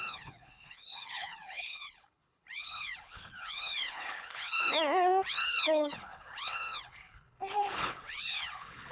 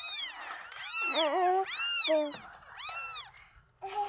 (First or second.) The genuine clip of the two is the second